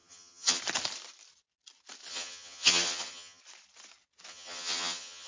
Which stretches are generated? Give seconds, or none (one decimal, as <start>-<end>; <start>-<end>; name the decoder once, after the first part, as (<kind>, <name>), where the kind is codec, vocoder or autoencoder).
0.0-0.6 (vocoder, HiFi-GAN); 2.1-3.4; 4.3-5.3